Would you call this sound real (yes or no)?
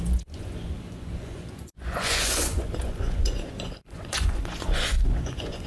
no